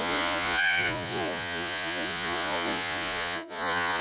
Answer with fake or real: fake